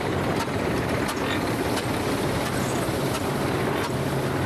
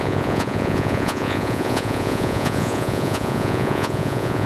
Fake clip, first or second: second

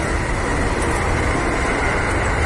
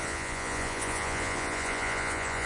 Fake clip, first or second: second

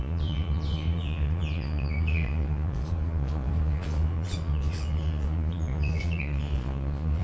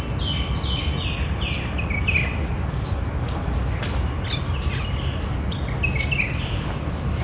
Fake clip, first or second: first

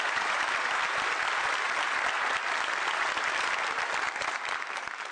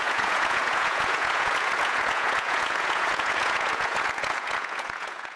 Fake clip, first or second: second